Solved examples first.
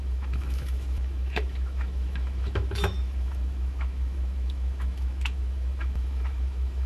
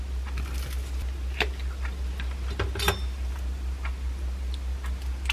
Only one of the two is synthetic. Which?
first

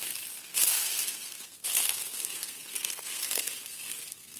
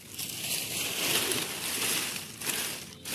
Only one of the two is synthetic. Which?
first